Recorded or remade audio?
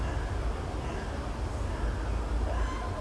recorded